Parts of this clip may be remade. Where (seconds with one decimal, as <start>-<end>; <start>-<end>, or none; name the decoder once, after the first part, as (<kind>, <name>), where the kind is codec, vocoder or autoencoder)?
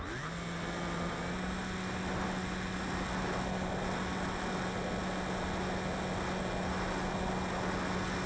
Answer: none